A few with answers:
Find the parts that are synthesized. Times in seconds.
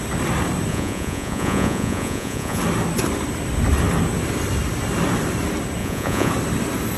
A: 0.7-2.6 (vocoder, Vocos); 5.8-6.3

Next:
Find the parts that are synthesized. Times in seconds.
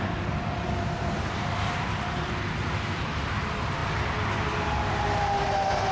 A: none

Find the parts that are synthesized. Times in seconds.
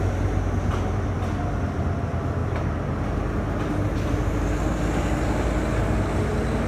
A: none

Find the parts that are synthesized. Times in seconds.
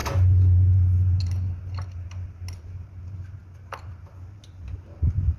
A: none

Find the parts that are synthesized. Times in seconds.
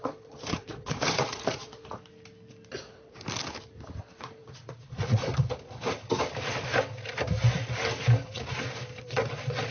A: 0.0-1.8 (vocoder, Vocos); 4.2-5.2; 9.0-9.7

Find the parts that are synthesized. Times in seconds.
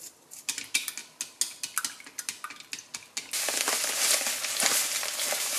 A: none